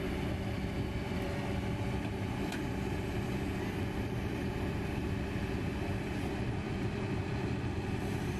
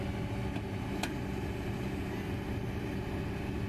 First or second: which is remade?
first